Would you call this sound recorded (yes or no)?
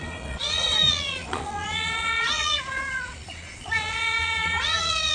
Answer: no